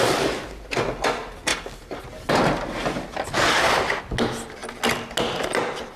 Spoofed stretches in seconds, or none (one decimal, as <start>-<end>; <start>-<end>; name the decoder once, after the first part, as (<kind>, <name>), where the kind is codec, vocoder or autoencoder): none